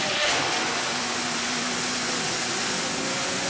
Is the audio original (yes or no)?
no